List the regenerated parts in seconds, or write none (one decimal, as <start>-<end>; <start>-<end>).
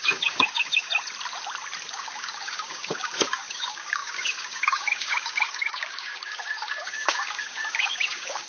0.0-0.9; 1.8-8.5